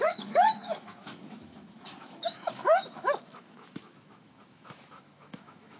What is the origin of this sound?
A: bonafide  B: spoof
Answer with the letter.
B